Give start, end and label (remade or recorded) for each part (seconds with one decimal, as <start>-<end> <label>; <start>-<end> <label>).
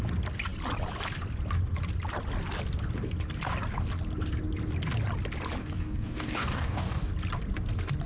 0.0-5.6 recorded; 5.6-7.1 remade; 7.1-8.1 recorded